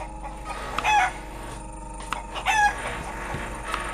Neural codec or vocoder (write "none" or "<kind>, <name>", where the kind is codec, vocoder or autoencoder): none